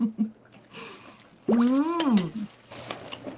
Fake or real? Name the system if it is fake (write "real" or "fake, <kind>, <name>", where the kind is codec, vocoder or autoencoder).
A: real